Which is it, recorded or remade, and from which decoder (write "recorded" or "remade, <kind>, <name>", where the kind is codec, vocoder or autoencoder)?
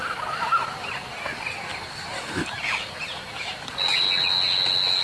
recorded